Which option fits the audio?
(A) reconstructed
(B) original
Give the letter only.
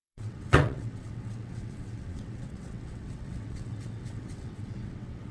A